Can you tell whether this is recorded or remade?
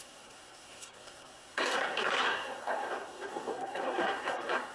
remade